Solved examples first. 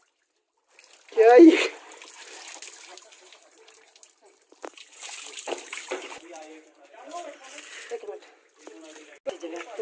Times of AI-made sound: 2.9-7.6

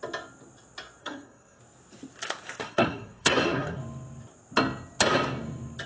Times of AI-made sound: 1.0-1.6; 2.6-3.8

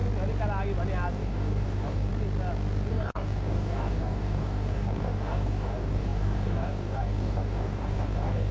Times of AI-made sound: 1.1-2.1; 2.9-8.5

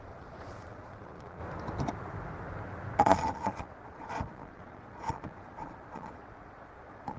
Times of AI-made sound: 0.0-1.4; 3.0-7.2